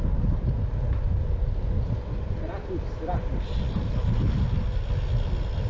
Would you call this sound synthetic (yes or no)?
no